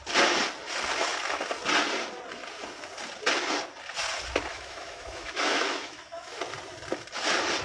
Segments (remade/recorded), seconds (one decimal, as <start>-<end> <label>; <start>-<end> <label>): 0.0-4.5 recorded; 4.5-6.4 remade; 6.4-7.6 recorded